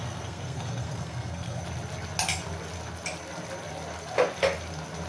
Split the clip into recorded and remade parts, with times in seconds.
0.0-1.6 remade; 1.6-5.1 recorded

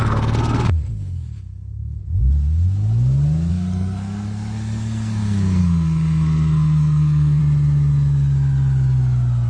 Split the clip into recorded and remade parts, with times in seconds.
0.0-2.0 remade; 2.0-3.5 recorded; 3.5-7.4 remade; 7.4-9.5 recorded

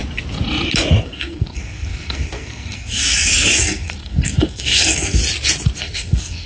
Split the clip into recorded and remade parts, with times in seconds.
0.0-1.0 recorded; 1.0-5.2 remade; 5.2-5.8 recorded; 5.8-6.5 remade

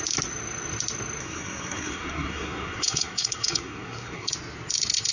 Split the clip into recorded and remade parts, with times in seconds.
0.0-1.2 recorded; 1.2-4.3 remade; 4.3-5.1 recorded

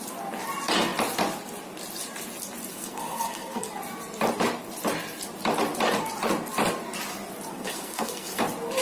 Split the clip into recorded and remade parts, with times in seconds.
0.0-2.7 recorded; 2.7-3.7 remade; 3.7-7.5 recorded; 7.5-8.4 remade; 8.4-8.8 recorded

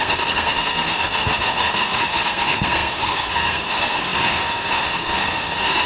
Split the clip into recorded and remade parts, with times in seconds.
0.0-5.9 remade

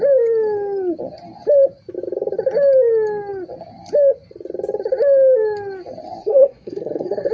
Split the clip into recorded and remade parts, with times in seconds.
0.0-6.2 recorded; 6.2-7.3 remade